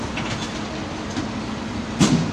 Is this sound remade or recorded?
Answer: recorded